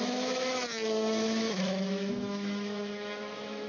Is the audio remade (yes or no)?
yes